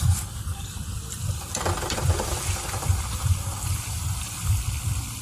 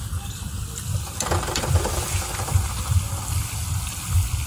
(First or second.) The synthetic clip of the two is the first